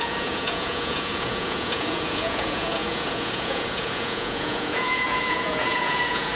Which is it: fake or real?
fake